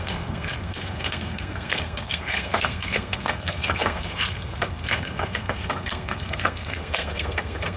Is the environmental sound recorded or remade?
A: remade